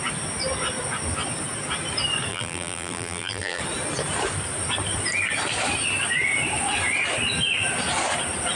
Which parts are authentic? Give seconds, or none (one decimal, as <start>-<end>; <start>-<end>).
0.0-2.3; 3.6-8.6